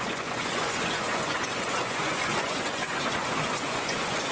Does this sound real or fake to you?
fake